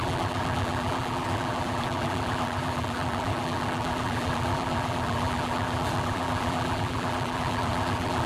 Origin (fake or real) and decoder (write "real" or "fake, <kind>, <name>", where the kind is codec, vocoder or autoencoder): fake, vocoder, BigVGAN v2